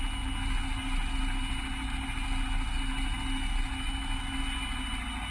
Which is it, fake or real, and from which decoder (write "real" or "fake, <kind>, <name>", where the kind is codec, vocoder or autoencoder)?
real